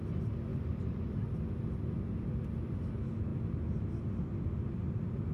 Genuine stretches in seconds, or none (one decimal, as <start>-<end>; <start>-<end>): 0.0-0.5; 1.1-5.3